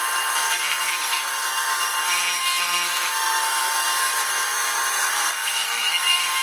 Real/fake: fake